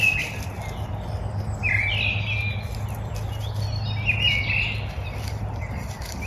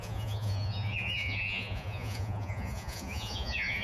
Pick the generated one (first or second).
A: second